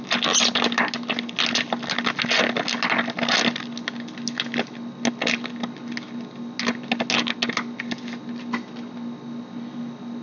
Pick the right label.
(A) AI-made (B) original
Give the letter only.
B